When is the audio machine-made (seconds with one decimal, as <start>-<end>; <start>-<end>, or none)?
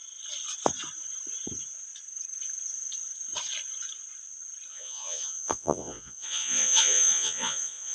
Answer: 4.7-7.9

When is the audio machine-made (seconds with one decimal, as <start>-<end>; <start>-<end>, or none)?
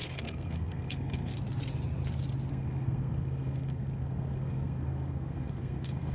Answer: 0.0-1.3; 2.5-6.1